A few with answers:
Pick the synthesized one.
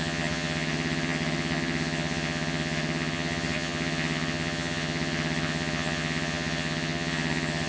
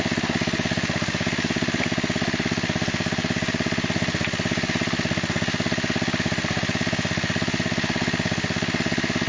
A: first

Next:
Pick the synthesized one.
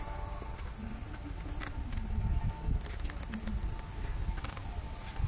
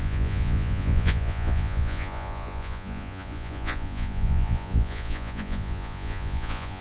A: second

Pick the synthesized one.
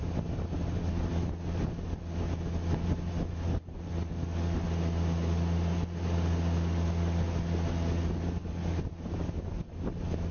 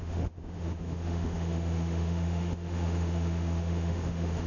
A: second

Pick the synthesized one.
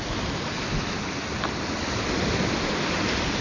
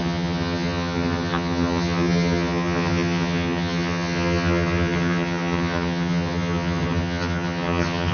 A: second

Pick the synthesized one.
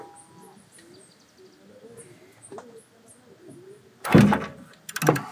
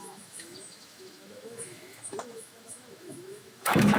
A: second